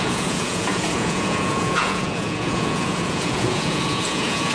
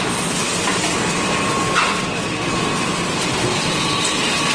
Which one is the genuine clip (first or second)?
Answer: second